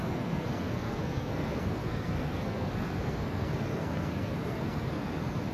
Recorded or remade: remade